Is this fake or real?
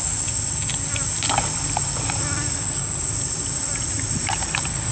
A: real